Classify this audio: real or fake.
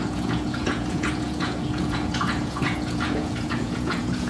fake